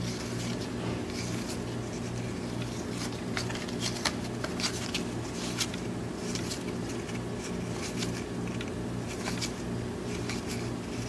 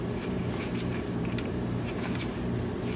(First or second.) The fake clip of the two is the second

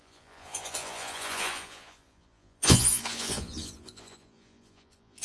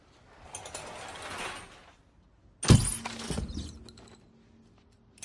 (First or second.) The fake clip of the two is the first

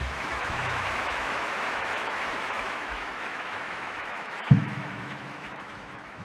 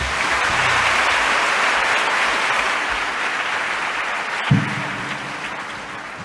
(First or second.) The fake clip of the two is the first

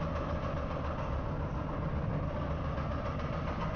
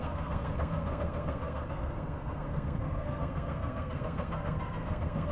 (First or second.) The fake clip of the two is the second